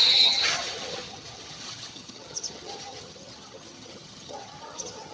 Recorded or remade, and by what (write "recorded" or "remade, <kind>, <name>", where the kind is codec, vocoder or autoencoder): remade, vocoder, HiFi-GAN